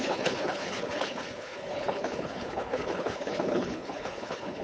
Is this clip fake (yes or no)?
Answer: yes